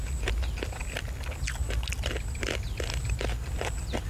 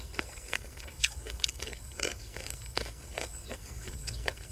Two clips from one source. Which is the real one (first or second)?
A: first